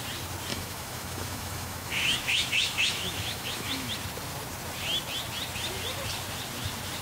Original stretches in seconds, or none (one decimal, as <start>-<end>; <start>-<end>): 0.0-0.5; 3.9-7.0